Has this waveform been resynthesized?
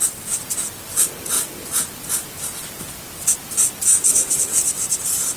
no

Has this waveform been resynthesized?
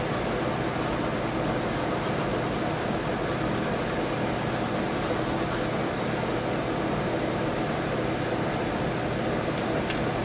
no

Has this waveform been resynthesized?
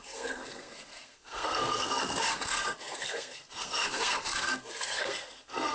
yes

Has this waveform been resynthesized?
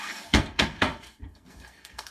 yes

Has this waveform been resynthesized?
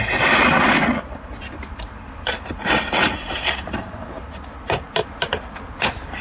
no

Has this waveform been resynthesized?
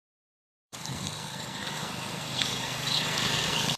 yes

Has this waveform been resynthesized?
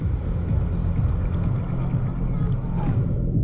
no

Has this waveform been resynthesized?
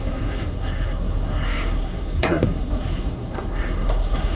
yes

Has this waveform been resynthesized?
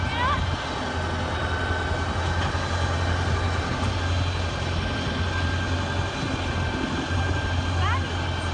no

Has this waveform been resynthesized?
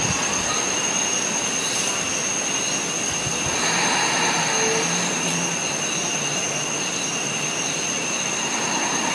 no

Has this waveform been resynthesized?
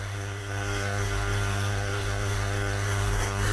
yes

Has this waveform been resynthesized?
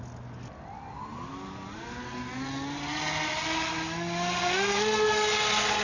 no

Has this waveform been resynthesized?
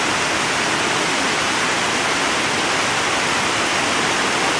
no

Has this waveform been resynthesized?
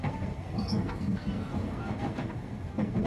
yes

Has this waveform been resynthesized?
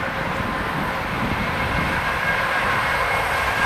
no